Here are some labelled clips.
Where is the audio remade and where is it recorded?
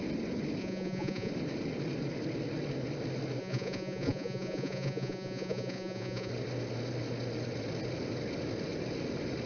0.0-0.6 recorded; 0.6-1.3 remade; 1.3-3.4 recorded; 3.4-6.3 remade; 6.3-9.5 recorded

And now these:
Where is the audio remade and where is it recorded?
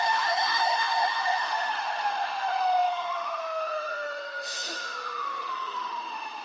0.0-6.4 remade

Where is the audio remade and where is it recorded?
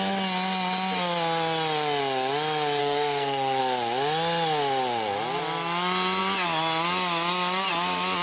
0.0-2.8 recorded; 2.8-3.6 remade; 3.6-8.2 recorded